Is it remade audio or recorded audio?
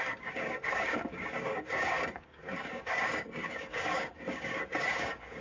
remade